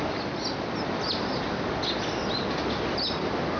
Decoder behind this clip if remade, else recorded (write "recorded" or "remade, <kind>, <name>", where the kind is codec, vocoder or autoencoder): recorded